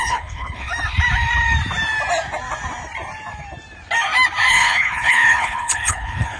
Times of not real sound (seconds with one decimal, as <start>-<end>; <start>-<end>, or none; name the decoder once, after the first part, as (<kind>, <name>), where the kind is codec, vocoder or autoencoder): 0.0-0.7 (codec, HILCodec); 4.5-6.4